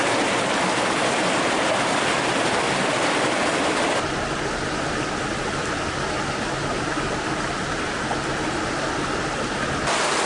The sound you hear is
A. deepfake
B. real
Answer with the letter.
B